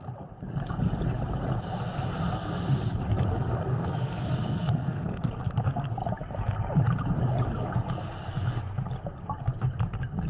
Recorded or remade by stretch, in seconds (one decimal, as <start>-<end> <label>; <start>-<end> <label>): 0.0-3.7 recorded; 3.7-5.3 remade; 5.3-10.3 recorded